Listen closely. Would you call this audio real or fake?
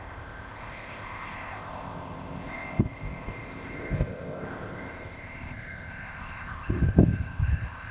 fake